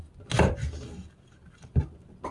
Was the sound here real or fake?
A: real